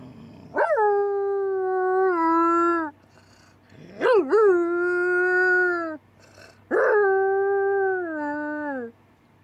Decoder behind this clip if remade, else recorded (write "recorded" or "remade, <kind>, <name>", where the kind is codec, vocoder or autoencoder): recorded